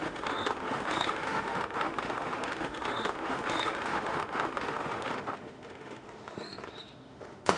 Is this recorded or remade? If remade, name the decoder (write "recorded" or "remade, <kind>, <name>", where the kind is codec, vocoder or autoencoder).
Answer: remade, autoencoder, DAC-VAE